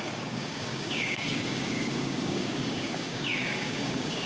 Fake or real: fake